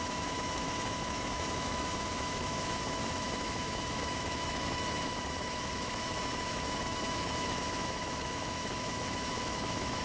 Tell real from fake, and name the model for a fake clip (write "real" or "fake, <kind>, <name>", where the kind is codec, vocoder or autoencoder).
fake, autoencoder, DAC-VAE